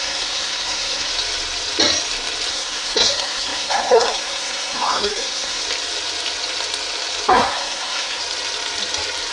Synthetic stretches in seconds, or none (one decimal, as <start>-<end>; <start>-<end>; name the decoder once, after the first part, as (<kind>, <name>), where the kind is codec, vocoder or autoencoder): 0.0-1.1 (codec, SNAC); 2.5-5.6; 7.3-8.2